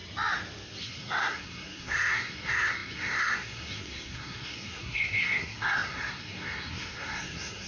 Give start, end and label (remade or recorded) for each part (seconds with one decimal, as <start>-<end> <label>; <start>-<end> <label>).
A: 0.0-0.8 recorded; 0.8-7.7 remade